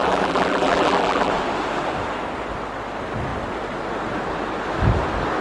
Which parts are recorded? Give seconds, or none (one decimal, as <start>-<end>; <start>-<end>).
1.3-5.4

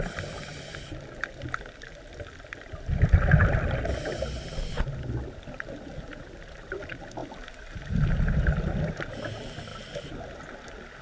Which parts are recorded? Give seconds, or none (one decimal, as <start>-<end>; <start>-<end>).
0.0-6.1; 6.7-11.0

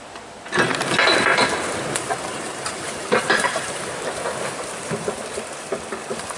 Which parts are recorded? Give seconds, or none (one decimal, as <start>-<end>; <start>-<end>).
0.0-2.3; 3.9-6.4

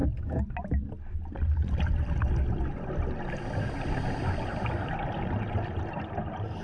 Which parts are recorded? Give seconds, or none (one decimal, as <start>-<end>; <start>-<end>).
0.0-6.6